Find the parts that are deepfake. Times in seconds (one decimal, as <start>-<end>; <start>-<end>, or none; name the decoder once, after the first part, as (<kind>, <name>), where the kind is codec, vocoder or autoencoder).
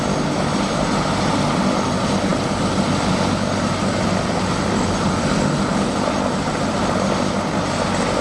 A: none